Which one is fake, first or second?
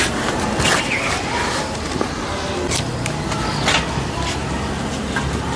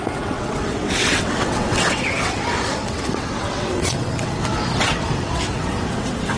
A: second